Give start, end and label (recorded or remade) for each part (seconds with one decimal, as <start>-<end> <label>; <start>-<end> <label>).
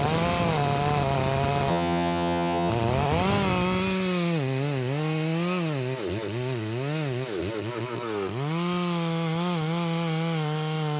0.0-1.7 recorded; 1.7-2.7 remade; 2.7-11.0 recorded